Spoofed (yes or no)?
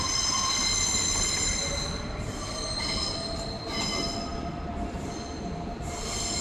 no